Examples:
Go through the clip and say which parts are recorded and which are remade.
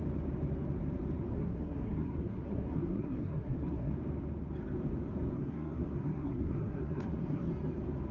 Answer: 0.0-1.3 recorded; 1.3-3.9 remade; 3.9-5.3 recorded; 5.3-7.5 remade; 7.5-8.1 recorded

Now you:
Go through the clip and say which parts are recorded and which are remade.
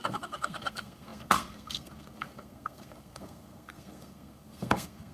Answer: 0.0-5.1 remade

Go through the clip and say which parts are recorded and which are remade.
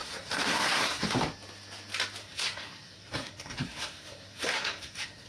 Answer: 0.0-1.2 remade; 1.2-2.2 recorded; 2.2-5.3 remade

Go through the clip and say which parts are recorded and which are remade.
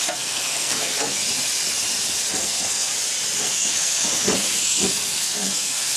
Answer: 0.0-1.2 remade; 1.2-2.3 recorded; 2.3-2.9 remade; 2.9-3.4 recorded; 3.4-6.0 remade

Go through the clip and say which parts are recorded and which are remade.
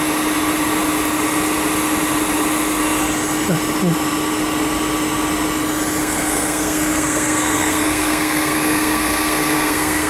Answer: 0.0-6.0 recorded; 6.0-10.1 remade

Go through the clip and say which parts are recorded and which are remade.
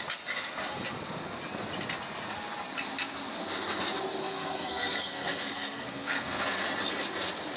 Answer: 0.0-4.2 recorded; 4.2-6.4 remade; 6.4-7.6 recorded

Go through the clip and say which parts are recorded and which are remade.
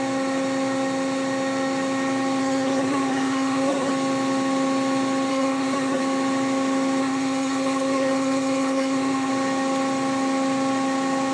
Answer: 0.0-2.4 recorded; 2.4-3.9 remade; 3.9-5.3 recorded; 5.3-6.0 remade; 6.0-7.0 recorded; 7.0-9.3 remade; 9.3-11.3 recorded